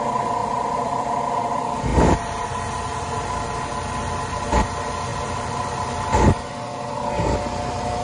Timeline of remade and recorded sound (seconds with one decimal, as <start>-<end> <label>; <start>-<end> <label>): 0.0-0.4 recorded; 0.4-1.1 remade; 1.1-5.1 recorded; 5.1-6.1 remade; 6.1-8.0 recorded

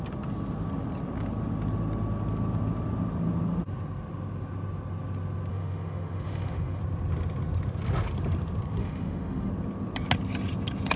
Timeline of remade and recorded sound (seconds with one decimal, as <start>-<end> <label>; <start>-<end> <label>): 0.0-5.5 recorded; 5.5-6.8 remade; 6.8-8.8 recorded; 8.8-9.5 remade; 9.5-11.0 recorded

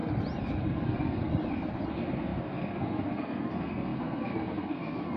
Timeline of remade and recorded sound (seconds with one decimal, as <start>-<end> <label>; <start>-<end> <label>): 0.0-0.6 recorded; 0.6-1.3 remade; 1.3-1.9 recorded; 1.9-5.2 remade

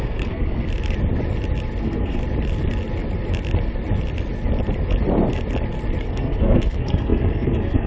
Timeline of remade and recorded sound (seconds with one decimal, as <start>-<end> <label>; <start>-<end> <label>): 0.0-0.7 remade; 0.7-1.8 recorded; 1.8-2.2 remade; 2.2-6.0 recorded; 6.0-7.9 remade

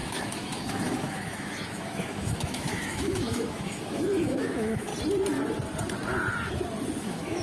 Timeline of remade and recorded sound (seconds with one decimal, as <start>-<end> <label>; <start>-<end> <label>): 0.0-4.9 remade; 4.9-7.0 recorded; 7.0-7.4 remade